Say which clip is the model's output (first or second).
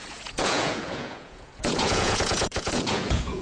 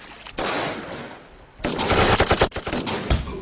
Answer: first